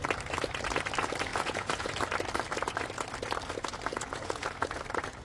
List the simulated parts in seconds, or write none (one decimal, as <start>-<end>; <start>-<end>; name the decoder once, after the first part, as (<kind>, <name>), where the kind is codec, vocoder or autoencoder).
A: 1.3-1.9 (vocoder, Vocos); 4.1-4.8